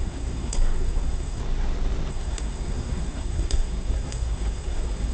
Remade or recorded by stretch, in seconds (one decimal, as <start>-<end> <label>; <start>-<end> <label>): 0.0-1.4 remade; 1.4-2.1 recorded; 2.1-5.1 remade